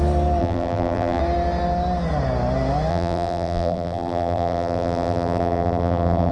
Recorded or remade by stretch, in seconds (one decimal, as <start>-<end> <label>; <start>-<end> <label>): 0.0-0.4 recorded; 0.4-1.2 remade; 1.2-2.9 recorded; 2.9-6.3 remade